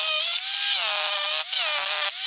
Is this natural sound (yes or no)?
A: yes